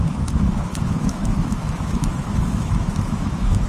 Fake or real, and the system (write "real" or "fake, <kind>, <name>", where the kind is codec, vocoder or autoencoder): fake, autoencoder, DAC-VAE